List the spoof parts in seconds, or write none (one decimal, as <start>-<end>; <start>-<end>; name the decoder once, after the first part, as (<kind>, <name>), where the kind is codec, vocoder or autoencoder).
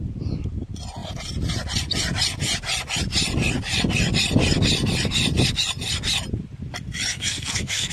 7.1-7.9 (codec, SNAC)